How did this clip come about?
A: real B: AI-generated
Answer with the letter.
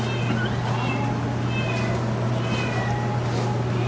A